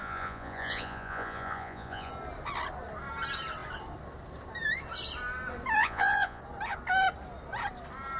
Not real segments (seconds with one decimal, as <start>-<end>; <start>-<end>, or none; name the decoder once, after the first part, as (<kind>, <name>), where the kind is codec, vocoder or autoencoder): 0.0-2.1 (vocoder, Vocos); 5.8-6.4